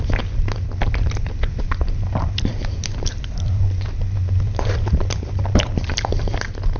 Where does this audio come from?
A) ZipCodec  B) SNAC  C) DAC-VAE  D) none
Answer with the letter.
D